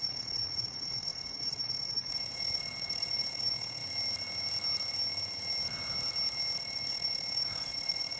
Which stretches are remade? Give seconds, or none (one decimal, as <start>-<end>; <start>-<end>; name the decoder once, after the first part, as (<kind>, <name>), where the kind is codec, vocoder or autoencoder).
0.0-3.8 (vocoder, Vocos); 6.6-8.2